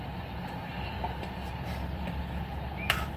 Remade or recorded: recorded